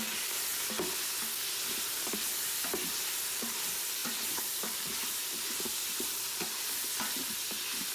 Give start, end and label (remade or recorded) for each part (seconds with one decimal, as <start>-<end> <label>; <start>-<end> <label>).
0.0-0.5 remade; 0.5-1.6 recorded; 1.6-7.9 remade